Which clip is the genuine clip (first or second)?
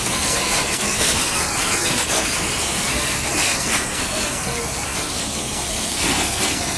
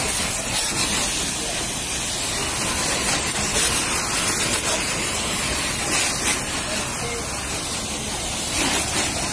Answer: second